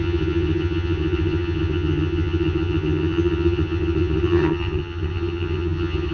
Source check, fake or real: fake